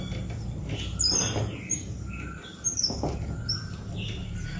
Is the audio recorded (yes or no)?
yes